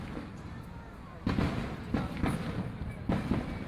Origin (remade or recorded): recorded